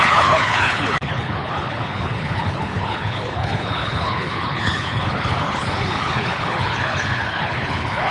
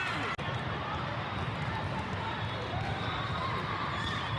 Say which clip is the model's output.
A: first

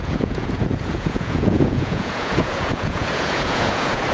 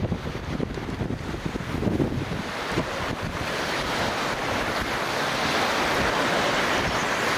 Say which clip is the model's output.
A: first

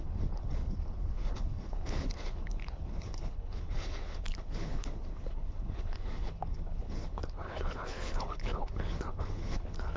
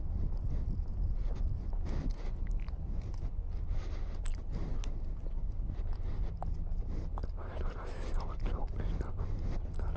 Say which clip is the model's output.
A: first